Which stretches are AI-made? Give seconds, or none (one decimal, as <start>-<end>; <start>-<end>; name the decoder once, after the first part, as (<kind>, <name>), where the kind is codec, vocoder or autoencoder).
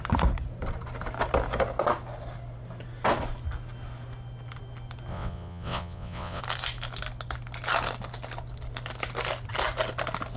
5.1-6.4 (vocoder, WaveNeXt)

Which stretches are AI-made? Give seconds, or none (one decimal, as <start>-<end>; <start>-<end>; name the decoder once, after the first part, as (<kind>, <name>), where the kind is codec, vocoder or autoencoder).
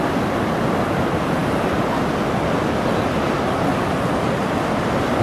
none